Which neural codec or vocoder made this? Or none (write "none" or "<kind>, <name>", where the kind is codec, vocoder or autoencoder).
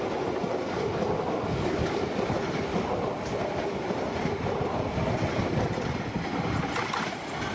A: none